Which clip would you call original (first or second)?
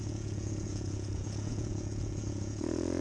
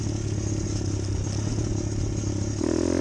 second